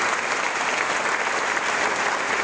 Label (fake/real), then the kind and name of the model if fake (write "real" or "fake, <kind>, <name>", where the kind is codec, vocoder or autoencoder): real